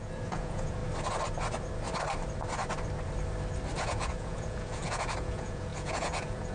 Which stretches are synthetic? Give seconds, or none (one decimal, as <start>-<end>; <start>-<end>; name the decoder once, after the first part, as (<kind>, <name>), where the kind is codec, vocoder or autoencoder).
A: 0.0-0.8 (vocoder, Vocos); 3.8-6.5